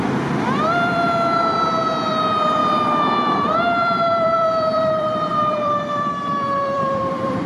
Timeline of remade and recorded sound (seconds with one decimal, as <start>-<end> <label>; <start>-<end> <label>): 0.0-7.5 remade